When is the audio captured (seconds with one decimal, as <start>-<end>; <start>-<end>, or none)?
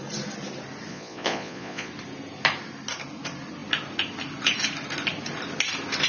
0.0-0.9; 1.9-6.1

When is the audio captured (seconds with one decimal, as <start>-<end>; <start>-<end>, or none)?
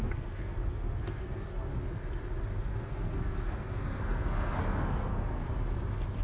1.7-2.6; 5.4-6.2